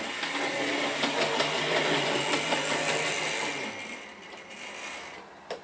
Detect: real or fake real